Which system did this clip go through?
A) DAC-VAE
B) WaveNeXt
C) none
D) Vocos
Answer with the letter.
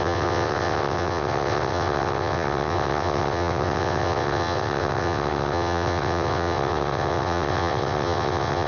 B